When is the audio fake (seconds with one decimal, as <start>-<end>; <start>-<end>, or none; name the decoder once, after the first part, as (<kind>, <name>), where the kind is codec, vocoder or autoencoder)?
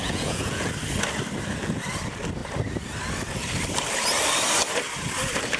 0.0-0.7 (vocoder, Vocos)